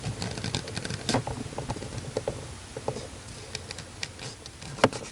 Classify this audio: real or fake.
real